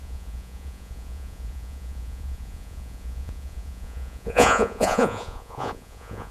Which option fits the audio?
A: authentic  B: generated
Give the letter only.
B